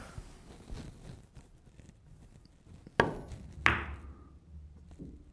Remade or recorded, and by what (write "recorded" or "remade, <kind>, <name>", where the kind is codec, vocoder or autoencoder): recorded